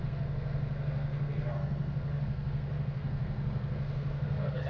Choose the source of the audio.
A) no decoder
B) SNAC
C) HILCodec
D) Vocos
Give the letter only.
B